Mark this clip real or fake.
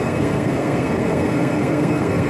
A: fake